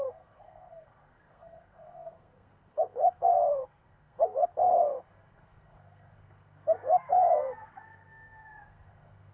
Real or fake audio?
fake